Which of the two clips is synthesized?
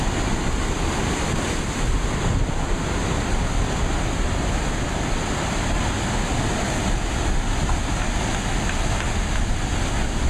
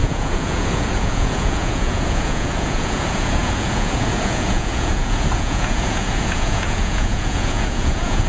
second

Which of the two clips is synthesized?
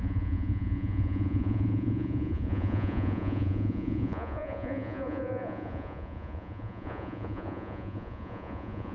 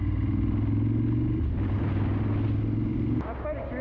first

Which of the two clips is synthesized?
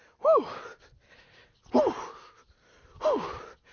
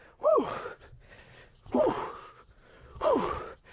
second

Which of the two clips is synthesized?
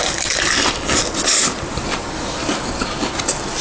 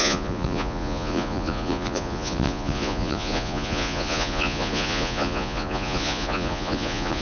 second